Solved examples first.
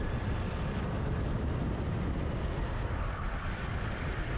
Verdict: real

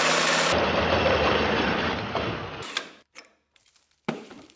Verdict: fake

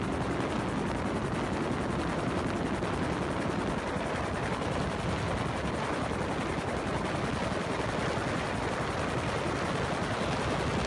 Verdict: real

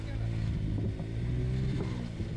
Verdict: real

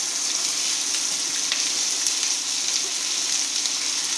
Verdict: real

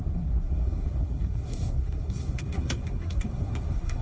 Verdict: fake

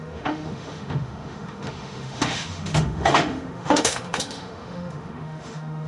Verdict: fake